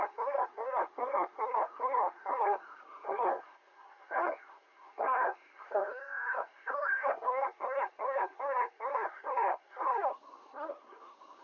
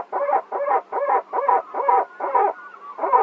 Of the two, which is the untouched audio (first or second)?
second